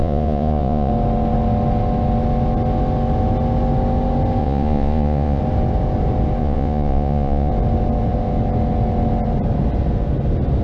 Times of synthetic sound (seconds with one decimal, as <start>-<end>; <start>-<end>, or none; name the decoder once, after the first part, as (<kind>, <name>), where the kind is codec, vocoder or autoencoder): 0.0-0.9 (vocoder, Vocos); 4.4-5.4; 6.4-7.5